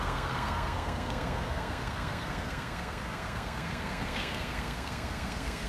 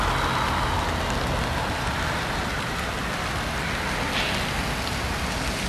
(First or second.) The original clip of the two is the second